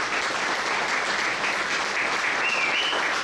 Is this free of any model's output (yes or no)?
yes